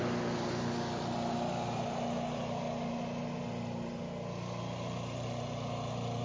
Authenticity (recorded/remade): recorded